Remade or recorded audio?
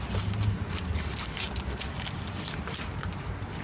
recorded